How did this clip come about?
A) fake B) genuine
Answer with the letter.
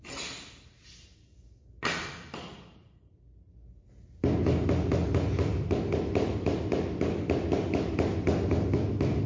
B